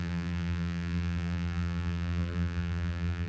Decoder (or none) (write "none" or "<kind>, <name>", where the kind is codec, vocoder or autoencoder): vocoder, BigVGAN v2